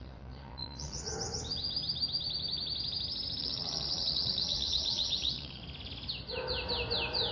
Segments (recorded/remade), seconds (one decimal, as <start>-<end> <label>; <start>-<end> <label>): 0.0-1.1 remade; 1.1-3.4 recorded; 3.4-5.6 remade; 5.6-7.3 recorded